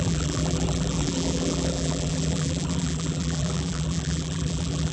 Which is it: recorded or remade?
remade